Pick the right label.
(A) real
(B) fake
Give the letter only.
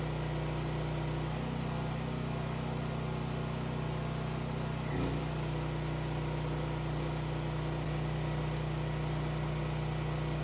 A